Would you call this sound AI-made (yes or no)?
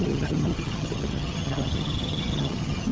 yes